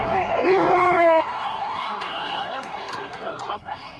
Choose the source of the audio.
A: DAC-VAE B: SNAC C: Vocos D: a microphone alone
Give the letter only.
B